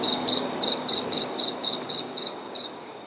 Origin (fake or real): fake